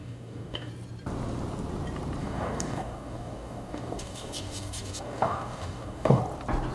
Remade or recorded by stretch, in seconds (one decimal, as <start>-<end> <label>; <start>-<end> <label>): 0.0-0.7 remade; 0.7-2.2 recorded; 2.2-6.2 remade; 6.2-6.7 recorded